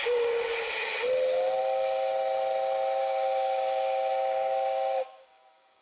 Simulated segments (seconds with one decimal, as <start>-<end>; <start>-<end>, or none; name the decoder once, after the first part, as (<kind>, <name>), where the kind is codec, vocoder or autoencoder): 0.0-0.5 (codec, DAC); 1.6-2.1; 3.0-5.8

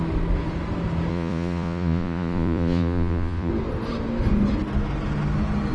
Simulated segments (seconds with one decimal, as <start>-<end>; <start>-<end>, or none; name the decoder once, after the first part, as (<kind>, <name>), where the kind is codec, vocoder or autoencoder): 1.1-3.5 (vocoder, Vocos)

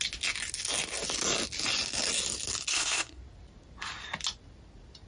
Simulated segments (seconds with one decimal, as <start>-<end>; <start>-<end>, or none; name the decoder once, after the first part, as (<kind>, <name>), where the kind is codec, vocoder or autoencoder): 2.7-3.2 (codec, SNAC)

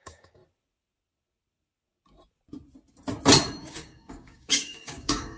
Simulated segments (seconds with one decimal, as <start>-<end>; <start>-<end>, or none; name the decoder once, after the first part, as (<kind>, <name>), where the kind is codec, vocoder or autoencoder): 0.0-0.4 (codec, DAC); 3.6-5.4

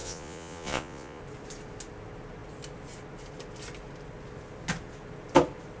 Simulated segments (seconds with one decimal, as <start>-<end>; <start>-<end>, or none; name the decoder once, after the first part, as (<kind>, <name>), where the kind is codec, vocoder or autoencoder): 0.0-1.2 (vocoder, Vocos)